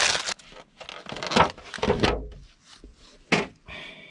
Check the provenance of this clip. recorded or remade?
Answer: recorded